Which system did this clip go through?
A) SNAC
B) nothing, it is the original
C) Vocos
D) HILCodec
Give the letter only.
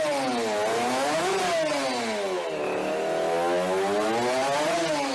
B